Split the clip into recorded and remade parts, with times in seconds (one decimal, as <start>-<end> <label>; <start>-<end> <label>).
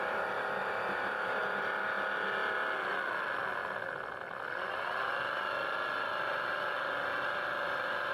0.0-0.6 recorded; 0.6-1.4 remade; 1.4-8.1 recorded